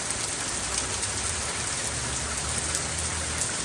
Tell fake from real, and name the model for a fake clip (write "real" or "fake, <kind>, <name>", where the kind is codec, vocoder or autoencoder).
real